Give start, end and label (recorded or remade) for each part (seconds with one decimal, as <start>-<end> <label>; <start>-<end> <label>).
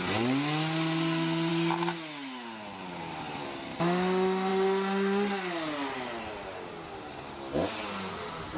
0.0-8.6 recorded